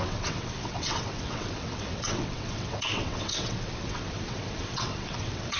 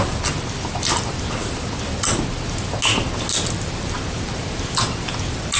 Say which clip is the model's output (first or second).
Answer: first